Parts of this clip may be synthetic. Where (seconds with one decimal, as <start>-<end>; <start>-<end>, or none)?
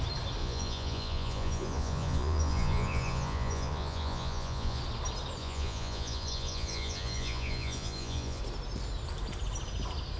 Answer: 0.4-4.8; 5.4-8.4